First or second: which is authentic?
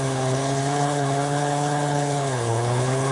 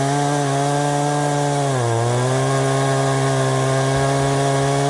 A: second